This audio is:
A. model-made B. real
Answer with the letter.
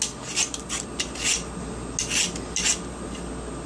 B